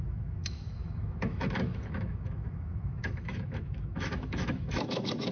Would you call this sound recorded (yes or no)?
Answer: no